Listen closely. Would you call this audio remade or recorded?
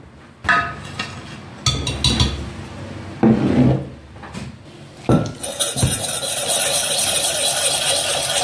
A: recorded